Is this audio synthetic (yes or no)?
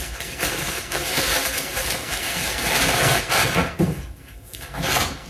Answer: yes